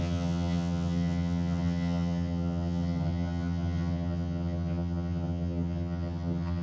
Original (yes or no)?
no